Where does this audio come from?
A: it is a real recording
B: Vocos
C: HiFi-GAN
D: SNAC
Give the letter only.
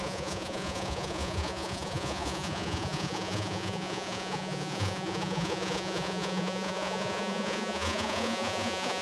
B